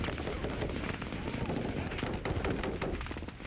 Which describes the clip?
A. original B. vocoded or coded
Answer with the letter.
A